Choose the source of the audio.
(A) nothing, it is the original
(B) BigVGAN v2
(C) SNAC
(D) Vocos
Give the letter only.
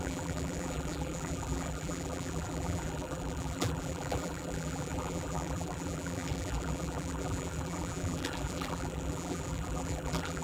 B